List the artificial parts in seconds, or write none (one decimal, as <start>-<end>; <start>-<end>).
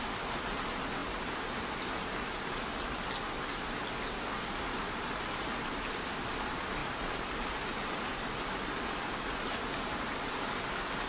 none